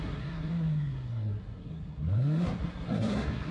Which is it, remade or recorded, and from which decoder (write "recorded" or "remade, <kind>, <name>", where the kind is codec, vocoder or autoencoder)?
remade, codec, SNAC